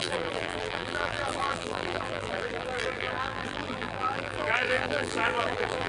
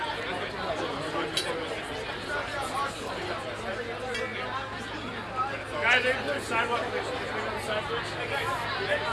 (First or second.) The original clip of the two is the second